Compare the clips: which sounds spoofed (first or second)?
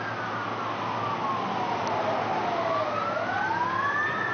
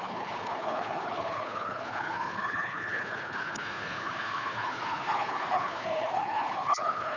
second